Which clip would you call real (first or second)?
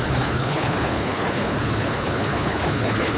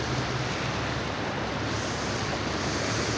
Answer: second